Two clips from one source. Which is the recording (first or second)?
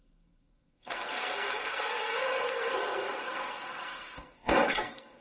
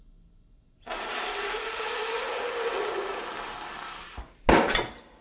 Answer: second